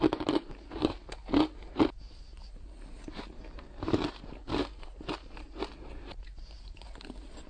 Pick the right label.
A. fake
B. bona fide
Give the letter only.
A